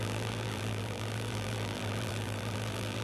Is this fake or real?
fake